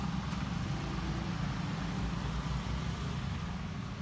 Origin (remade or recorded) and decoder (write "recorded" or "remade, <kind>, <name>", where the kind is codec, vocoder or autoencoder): recorded